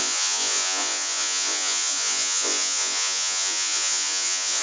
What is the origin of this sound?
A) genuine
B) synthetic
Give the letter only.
B